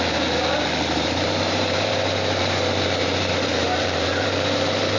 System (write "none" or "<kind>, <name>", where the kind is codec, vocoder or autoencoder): vocoder, BigVGAN v2